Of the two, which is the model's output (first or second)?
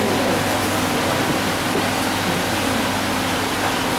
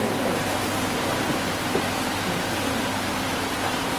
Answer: second